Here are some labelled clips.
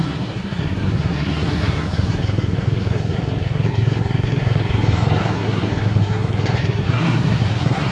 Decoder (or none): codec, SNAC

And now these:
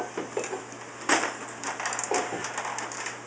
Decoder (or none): none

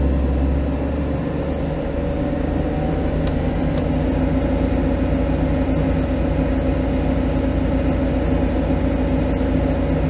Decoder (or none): none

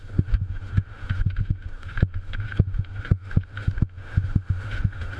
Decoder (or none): autoencoder, DAC-VAE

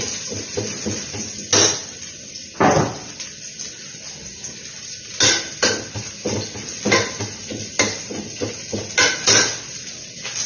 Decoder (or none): none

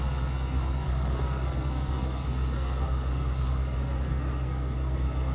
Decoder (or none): codec, SNAC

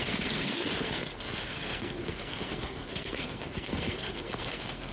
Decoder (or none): codec, SNAC